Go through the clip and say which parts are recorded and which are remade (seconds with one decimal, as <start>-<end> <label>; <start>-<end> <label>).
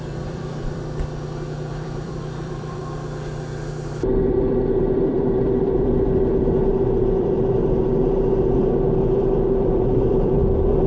0.0-2.8 remade; 2.8-3.9 recorded; 3.9-10.9 remade